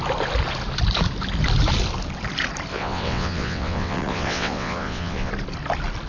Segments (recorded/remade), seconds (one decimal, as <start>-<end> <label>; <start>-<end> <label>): 0.0-2.7 recorded; 2.7-5.3 remade; 5.3-6.1 recorded

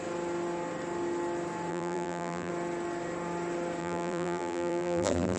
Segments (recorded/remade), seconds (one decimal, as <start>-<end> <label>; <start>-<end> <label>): 0.0-1.7 recorded; 1.7-2.5 remade; 2.5-3.8 recorded; 3.8-5.4 remade